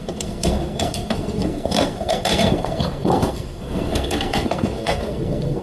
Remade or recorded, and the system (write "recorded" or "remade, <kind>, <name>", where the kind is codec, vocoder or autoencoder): remade, codec, SNAC